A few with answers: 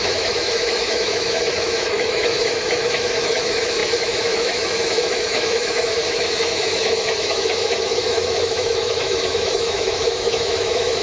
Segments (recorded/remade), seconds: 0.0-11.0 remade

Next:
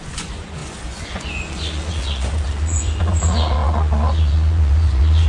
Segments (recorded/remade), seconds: 0.0-5.3 remade